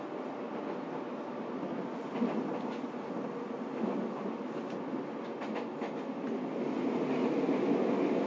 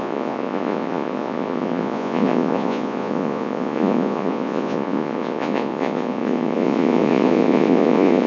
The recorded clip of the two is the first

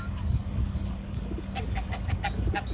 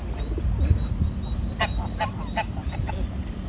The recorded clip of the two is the second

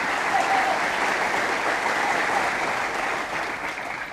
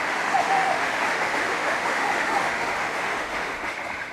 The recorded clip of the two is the first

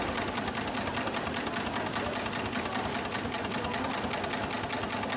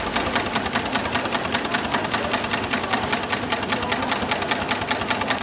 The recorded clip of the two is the first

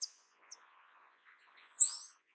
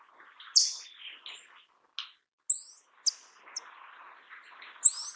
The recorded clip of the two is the second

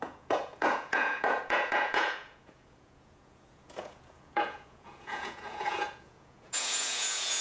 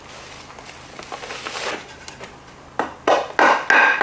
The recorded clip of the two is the second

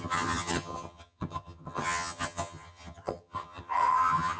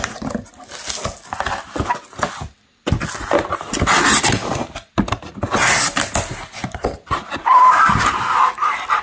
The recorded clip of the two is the second